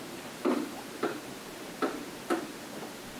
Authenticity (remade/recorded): remade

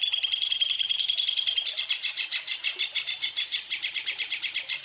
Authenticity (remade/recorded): remade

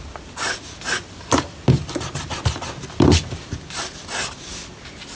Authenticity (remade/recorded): recorded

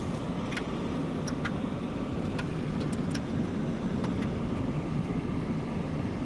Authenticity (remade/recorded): recorded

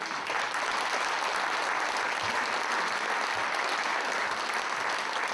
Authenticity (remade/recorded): recorded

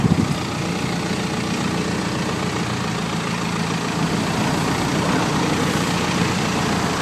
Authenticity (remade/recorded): recorded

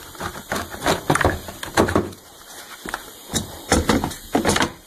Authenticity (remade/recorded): remade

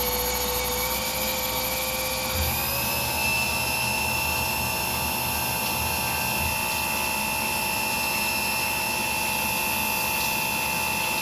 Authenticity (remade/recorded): recorded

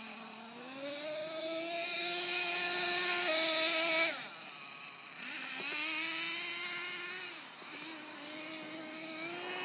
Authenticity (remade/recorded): recorded